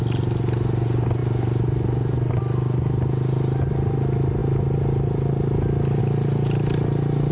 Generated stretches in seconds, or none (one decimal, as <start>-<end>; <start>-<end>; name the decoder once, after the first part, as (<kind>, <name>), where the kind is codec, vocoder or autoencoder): none